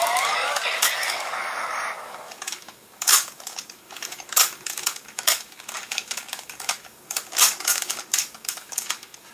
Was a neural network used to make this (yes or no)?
yes